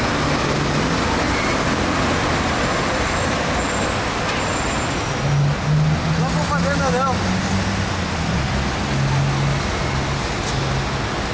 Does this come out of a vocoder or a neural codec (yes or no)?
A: no